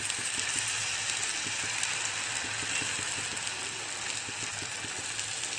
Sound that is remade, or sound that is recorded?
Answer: recorded